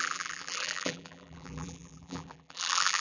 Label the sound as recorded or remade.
remade